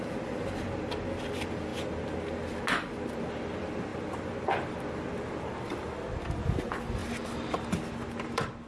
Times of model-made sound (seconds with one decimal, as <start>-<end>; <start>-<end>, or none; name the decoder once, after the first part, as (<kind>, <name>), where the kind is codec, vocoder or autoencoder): 0.0-8.7 (vocoder, BigVGAN v2)